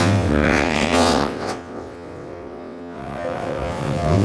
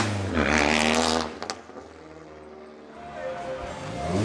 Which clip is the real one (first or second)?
second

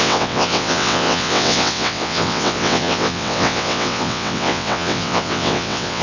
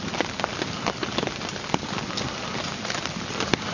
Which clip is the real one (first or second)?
second